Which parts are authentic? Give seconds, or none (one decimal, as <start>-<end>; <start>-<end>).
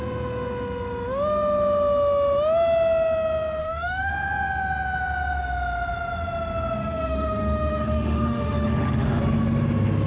0.0-3.6; 4.1-6.8; 9.2-10.1